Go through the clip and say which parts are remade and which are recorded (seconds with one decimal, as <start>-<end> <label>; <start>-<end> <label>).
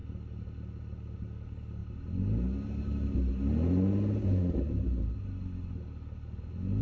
0.0-6.8 recorded